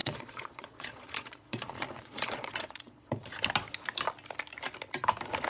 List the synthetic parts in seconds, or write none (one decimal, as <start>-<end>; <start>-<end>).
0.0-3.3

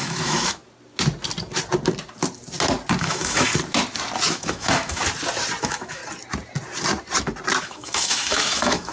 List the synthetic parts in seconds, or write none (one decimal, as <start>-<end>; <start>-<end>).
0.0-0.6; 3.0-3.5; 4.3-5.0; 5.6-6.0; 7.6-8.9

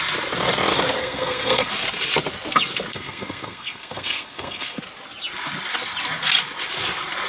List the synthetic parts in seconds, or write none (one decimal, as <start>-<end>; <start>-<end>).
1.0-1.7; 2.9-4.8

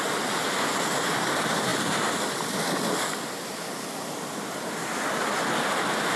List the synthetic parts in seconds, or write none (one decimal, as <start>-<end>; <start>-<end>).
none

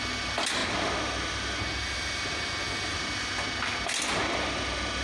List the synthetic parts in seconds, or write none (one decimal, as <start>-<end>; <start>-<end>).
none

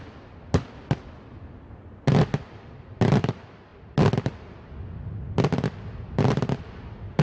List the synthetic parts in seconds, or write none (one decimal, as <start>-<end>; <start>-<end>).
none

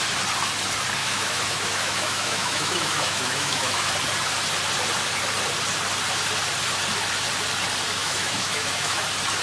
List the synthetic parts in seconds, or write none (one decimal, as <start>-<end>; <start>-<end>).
1.0-3.9; 8.0-9.0

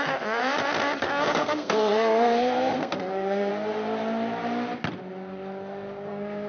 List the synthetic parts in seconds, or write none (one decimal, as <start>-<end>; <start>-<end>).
0.0-0.4; 1.0-3.5; 6.1-6.5